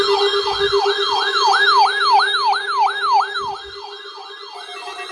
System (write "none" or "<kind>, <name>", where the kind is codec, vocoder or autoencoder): none